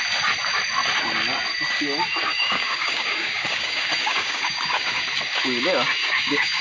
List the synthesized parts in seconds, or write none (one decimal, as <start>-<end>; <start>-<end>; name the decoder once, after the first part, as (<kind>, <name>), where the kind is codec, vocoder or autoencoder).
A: 2.3-5.0 (codec, DAC); 6.0-6.6